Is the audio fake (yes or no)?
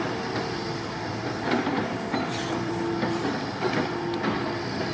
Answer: yes